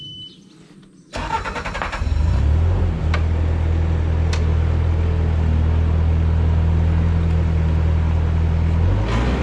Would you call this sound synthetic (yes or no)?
no